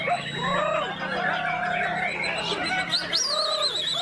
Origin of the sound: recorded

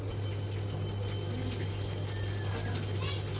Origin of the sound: recorded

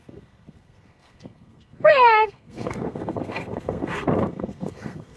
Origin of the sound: remade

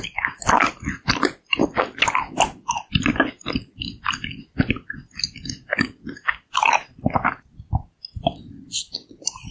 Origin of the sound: recorded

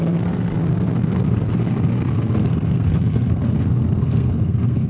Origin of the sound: remade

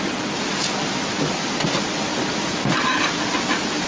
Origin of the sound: recorded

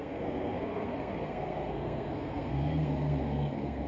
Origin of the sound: remade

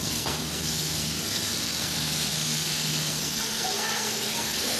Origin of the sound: remade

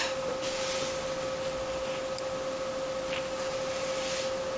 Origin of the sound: recorded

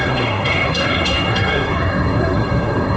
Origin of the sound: remade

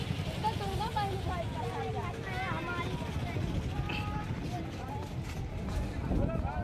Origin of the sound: recorded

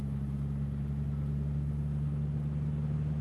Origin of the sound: recorded